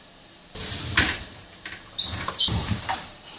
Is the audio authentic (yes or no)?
no